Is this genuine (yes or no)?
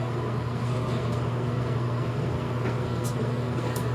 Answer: no